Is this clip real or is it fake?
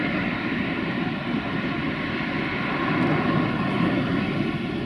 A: real